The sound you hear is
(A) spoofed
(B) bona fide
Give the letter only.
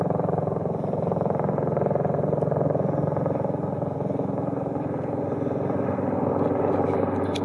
B